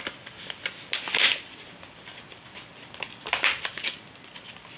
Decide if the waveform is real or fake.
real